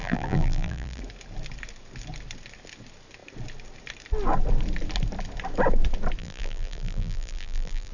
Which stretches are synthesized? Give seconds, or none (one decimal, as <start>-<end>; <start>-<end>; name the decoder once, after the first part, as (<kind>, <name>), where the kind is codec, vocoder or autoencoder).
0.0-1.0 (vocoder, BigVGAN v2); 6.2-7.9